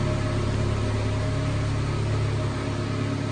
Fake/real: real